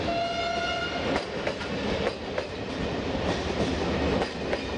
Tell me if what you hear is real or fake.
real